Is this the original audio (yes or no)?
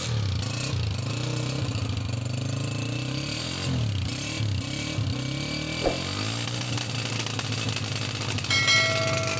yes